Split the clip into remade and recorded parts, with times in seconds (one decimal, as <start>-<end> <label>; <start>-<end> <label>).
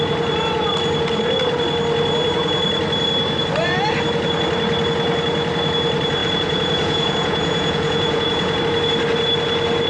0.0-6.2 recorded; 6.2-8.6 remade; 8.6-9.9 recorded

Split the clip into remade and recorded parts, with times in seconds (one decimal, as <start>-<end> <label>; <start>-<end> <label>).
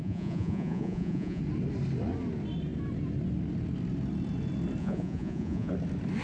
0.0-1.4 remade; 1.4-4.8 recorded; 4.8-5.7 remade; 5.7-6.2 recorded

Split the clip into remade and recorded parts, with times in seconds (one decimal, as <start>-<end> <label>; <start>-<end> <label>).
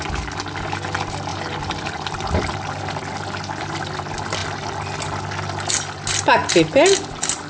0.0-7.5 recorded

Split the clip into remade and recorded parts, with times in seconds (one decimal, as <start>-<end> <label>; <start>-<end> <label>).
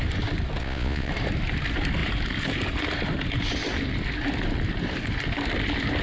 0.0-0.6 recorded; 0.6-1.1 remade; 1.1-6.0 recorded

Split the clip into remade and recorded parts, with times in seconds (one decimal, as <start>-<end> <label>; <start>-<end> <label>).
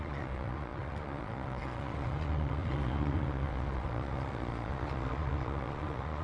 0.0-6.2 remade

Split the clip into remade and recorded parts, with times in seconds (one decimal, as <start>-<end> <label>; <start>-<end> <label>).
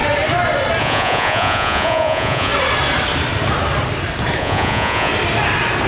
0.0-0.8 recorded; 0.8-2.5 remade; 2.5-4.4 recorded; 4.4-5.1 remade; 5.1-5.9 recorded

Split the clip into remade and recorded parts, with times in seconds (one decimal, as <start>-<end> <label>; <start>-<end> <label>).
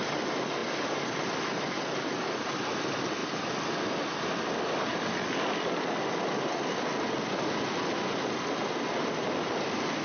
0.0-10.0 recorded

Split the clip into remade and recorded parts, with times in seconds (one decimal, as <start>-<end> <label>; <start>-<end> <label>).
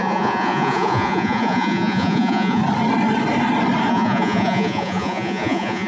0.0-2.6 remade; 2.6-3.9 recorded; 3.9-5.9 remade